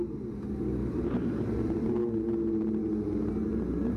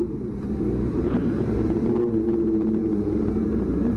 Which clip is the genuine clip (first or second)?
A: first